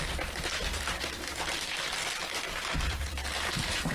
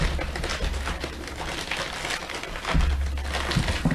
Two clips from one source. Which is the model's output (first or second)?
first